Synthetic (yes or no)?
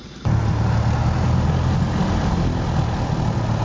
no